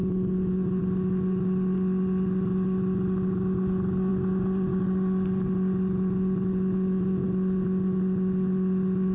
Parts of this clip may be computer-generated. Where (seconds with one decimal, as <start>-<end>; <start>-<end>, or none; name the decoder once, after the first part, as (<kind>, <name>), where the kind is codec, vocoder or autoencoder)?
none